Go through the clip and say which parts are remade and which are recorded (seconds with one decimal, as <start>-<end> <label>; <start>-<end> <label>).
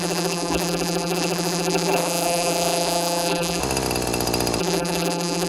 0.0-3.6 remade; 3.6-4.6 recorded; 4.6-5.5 remade